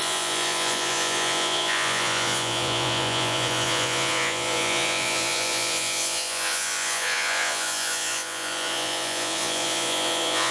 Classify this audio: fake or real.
fake